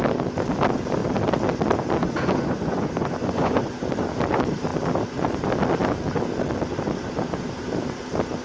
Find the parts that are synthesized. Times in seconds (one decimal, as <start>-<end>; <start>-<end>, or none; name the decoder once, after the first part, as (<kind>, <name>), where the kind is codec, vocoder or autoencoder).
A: 2.0-3.7 (vocoder, Vocos)